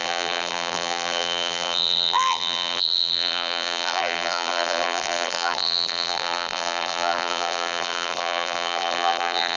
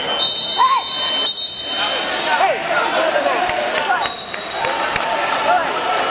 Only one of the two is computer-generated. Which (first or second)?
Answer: first